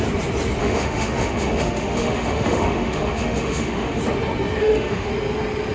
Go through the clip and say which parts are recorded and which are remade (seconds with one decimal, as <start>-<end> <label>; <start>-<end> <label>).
0.0-0.6 recorded; 0.6-4.0 remade; 4.0-4.6 recorded; 4.6-5.1 remade; 5.1-5.7 recorded